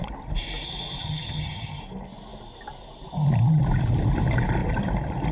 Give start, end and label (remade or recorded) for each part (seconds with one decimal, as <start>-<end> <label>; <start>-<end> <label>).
0.0-1.0 recorded; 1.0-1.8 remade; 1.8-5.3 recorded